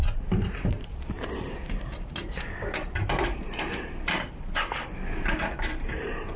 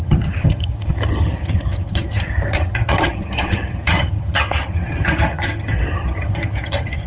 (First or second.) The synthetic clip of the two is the second